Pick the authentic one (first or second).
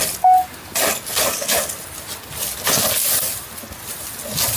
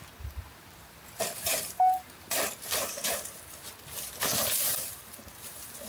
first